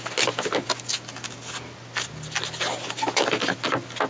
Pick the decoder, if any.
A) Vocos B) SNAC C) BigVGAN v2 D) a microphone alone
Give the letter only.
D